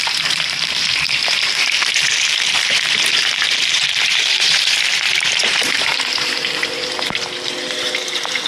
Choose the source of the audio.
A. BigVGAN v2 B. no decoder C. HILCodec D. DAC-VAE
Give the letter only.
A